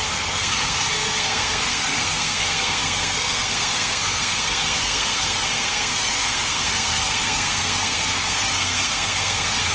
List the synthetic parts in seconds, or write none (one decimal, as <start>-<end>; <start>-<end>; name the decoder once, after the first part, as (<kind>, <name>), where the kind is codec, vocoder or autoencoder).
0.0-9.7 (codec, SNAC)